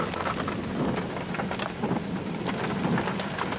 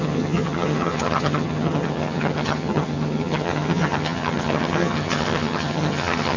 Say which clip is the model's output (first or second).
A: second